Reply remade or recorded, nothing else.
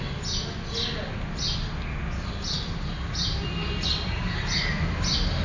recorded